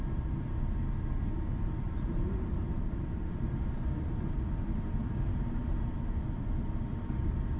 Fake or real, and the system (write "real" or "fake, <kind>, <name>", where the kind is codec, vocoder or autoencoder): fake, vocoder, BigVGAN v2